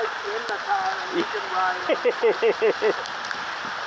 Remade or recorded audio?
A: recorded